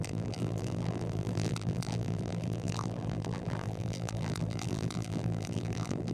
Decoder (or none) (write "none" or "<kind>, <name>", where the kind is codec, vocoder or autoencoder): vocoder, BigVGAN v2